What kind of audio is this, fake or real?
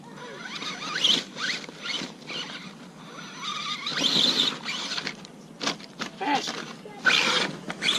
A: real